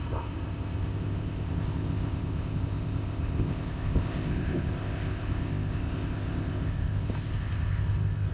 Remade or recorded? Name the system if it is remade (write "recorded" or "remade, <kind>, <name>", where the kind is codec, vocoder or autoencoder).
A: remade, codec, ZipCodec